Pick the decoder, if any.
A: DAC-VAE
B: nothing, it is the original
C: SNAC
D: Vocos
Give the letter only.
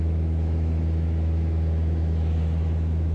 A